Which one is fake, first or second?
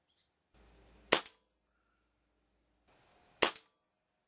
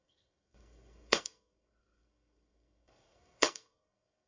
second